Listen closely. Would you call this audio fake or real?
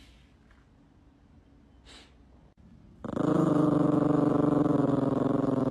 real